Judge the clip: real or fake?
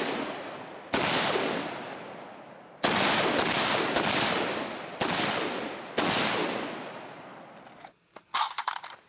real